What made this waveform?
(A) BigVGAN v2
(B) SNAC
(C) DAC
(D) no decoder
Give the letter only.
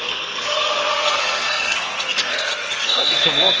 B